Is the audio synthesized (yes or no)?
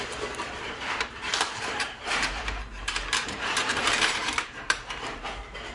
yes